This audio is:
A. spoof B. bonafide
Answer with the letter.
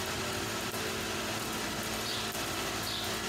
B